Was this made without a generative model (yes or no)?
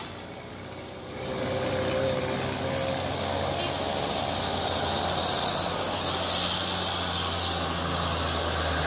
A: yes